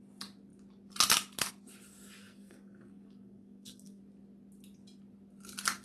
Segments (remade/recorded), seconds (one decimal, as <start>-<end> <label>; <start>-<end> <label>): 0.0-2.2 recorded; 2.2-4.0 remade; 4.0-5.8 recorded